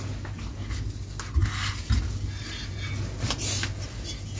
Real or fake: real